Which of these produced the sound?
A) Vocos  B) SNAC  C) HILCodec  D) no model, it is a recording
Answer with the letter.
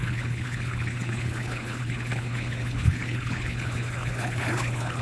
C